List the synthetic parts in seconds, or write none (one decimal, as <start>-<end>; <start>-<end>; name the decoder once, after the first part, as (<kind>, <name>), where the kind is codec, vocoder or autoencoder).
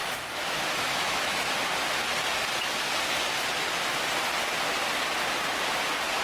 0.0-1.4 (autoencoder, DAC-VAE)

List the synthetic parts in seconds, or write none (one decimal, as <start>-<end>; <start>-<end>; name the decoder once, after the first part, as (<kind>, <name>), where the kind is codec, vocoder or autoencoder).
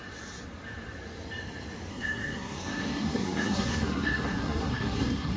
1.9-5.4 (codec, SNAC)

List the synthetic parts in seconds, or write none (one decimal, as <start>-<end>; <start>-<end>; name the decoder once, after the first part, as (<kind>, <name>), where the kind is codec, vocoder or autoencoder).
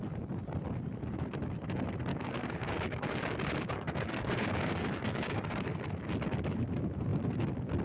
2.1-5.8 (codec, DAC)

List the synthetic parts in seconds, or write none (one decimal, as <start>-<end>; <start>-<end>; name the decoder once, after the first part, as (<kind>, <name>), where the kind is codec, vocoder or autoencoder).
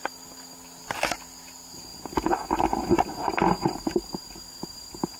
1.9-5.2 (vocoder, BigVGAN v2)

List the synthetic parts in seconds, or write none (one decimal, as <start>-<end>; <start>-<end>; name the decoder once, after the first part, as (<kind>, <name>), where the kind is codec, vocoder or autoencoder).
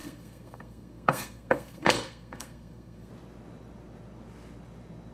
0.0-3.1 (codec, SNAC)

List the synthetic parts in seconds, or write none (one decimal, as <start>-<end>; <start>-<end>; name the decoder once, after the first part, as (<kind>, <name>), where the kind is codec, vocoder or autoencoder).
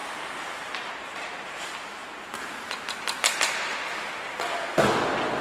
none